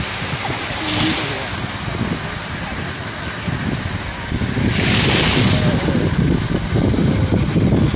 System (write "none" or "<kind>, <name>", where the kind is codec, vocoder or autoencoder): none